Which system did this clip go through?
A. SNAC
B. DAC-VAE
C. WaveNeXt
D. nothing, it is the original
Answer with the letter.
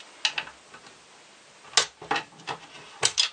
D